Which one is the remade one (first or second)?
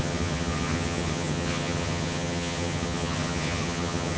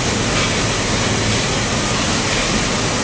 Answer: first